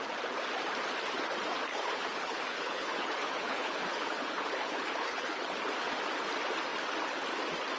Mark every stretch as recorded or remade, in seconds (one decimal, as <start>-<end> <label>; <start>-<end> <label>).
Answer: 0.0-1.7 recorded; 1.7-5.5 remade; 5.5-7.8 recorded